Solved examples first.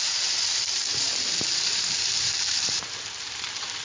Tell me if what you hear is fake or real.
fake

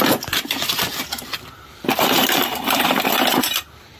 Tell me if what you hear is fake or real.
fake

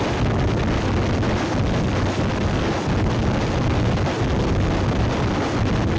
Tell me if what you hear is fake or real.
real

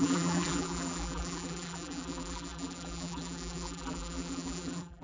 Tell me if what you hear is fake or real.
fake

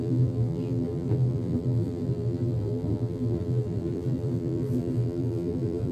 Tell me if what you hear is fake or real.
fake